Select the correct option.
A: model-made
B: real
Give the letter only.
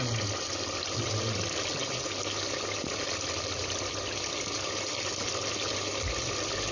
B